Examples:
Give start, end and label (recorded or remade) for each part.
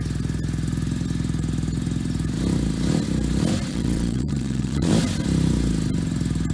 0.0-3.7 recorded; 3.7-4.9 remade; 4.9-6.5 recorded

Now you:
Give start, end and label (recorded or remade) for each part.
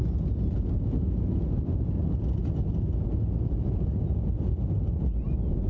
0.0-1.9 remade; 1.9-2.4 recorded; 2.4-5.7 remade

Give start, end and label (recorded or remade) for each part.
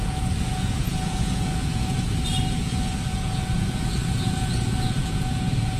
0.0-5.8 remade